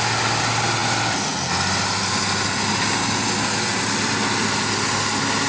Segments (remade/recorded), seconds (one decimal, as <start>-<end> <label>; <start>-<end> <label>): 0.0-5.5 recorded